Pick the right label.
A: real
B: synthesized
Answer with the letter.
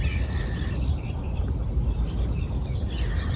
A